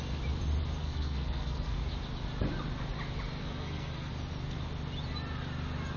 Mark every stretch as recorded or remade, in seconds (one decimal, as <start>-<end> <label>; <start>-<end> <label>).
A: 0.0-0.8 recorded; 0.8-1.8 remade; 1.8-3.4 recorded; 3.4-4.1 remade; 4.1-6.0 recorded